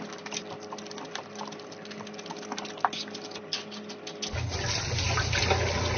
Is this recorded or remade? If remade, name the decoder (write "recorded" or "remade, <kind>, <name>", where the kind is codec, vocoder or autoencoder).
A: recorded